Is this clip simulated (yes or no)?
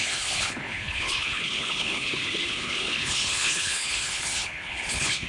yes